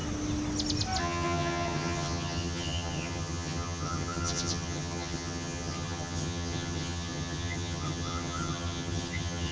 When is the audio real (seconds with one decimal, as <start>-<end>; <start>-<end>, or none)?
0.0-1.0